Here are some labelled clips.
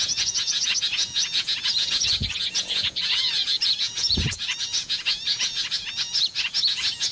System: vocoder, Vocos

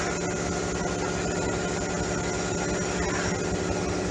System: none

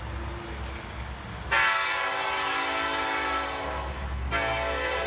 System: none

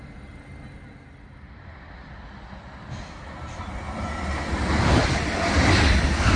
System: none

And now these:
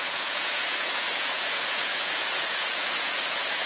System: vocoder, Vocos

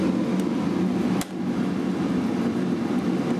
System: none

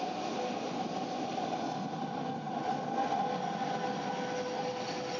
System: none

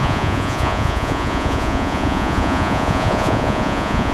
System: vocoder, Vocos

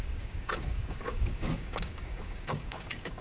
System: codec, DAC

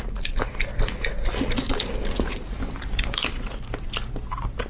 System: none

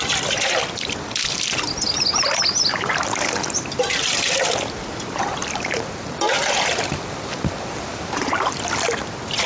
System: none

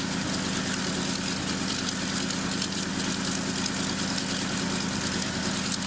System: none